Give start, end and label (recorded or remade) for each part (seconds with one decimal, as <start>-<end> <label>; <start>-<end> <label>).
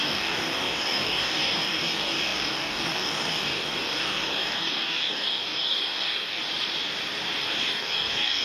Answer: 0.0-6.4 remade; 6.4-7.4 recorded; 7.4-8.4 remade